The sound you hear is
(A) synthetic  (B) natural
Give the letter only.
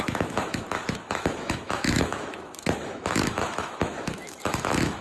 A